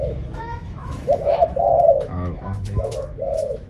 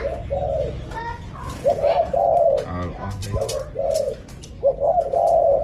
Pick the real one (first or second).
second